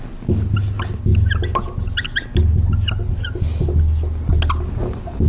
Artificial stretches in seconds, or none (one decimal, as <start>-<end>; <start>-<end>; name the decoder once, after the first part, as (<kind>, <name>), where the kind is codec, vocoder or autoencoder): none